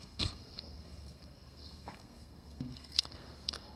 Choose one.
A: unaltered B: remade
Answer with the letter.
B